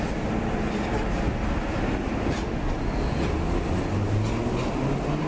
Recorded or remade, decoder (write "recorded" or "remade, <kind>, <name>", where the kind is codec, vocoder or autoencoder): recorded